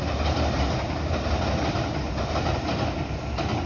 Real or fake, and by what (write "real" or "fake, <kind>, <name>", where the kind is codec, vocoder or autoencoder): real